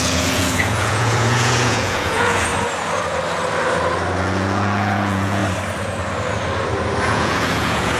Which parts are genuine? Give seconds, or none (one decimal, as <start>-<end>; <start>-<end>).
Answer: 2.5-4.2; 5.4-7.0

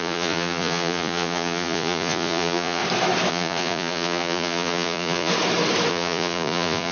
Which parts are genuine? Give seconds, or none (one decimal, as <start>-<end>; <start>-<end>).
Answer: 2.8-3.3; 5.3-5.9

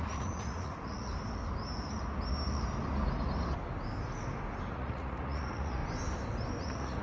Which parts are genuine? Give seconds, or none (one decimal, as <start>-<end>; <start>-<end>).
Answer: 1.1-4.7; 5.8-6.6

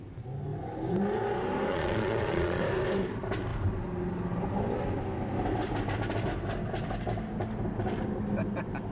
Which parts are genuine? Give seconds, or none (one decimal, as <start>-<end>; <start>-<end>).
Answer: 0.0-1.7; 2.6-8.9

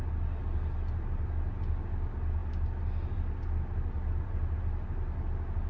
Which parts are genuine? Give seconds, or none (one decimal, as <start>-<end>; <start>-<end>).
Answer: 0.0-5.7